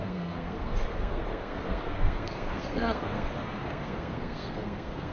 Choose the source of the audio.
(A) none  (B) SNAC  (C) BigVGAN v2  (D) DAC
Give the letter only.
B